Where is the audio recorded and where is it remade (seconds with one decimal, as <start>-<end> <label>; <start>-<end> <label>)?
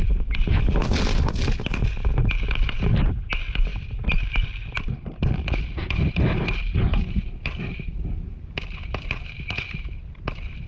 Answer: 0.0-10.7 recorded